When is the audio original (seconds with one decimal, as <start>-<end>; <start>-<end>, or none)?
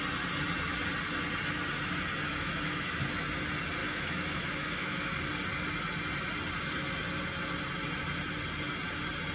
0.0-2.3; 2.9-3.8; 5.1-9.3